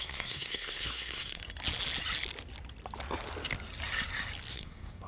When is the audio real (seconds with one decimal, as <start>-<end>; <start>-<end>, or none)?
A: 1.4-4.5